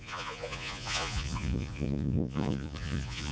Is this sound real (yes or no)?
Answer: no